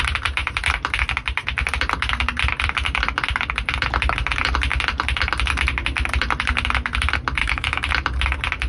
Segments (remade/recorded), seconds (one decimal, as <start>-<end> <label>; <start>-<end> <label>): 0.0-7.4 recorded; 7.4-7.9 remade; 7.9-8.7 recorded